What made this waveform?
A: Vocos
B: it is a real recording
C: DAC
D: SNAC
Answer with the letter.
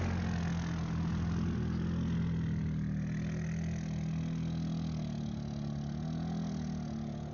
B